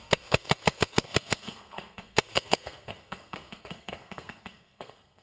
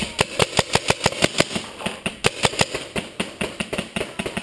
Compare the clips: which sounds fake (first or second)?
first